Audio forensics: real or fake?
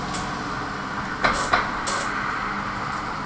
real